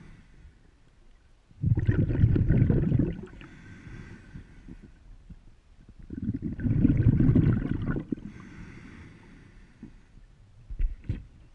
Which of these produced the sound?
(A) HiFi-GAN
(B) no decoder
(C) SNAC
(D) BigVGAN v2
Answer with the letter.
B